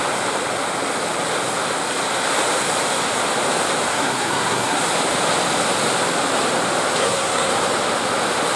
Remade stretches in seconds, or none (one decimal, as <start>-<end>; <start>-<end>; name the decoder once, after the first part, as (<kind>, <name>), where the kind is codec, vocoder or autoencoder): 3.9-4.8 (codec, SNAC); 7.0-7.5